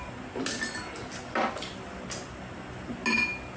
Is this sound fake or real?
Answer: real